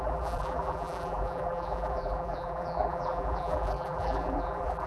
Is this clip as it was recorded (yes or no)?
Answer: no